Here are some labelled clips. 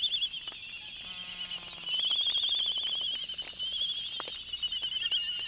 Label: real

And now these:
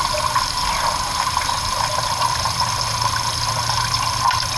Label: real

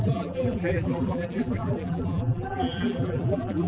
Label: fake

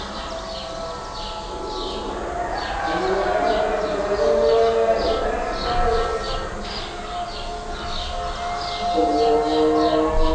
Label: real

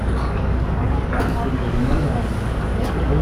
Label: fake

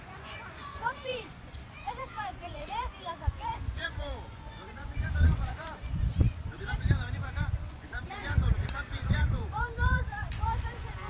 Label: fake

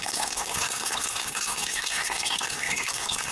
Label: fake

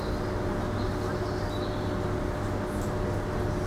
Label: real